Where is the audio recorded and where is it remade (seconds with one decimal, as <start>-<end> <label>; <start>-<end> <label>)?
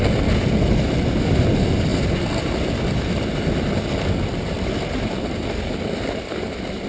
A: 0.0-6.9 recorded